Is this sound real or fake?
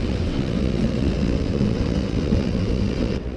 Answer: fake